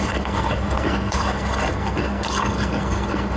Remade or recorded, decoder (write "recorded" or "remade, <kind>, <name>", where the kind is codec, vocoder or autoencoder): remade, codec, SNAC